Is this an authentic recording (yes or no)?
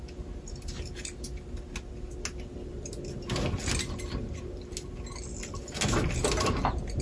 yes